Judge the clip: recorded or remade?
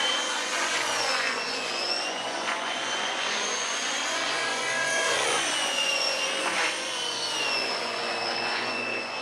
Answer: remade